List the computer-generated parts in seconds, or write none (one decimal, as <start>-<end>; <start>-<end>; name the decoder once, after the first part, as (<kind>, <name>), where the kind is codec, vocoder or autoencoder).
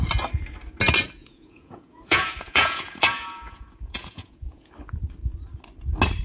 1.2-4.7 (vocoder, Vocos)